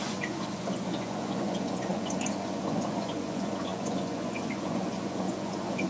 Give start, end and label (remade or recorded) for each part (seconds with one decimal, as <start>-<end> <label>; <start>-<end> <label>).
0.0-5.9 remade